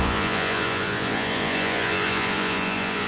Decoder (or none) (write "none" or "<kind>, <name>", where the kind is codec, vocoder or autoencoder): vocoder, Vocos